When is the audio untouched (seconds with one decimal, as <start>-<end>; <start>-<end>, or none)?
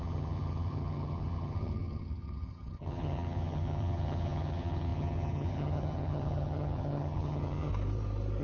7.7-8.4